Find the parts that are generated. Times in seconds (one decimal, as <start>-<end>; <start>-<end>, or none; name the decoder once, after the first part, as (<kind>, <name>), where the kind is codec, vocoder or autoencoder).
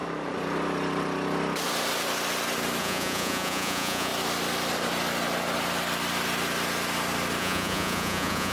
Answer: 2.8-4.1 (vocoder, Vocos); 7.4-8.5